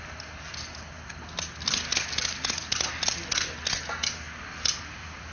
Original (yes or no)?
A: yes